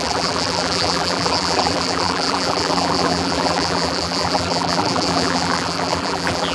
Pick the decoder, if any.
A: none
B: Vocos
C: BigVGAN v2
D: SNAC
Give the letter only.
C